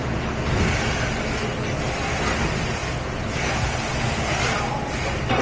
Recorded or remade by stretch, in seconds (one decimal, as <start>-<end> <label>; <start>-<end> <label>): 0.0-5.4 recorded